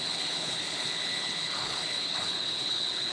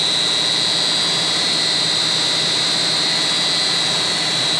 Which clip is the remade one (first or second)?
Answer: first